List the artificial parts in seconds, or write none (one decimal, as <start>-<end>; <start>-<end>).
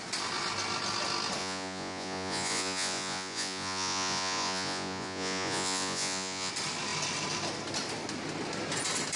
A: 1.4-6.5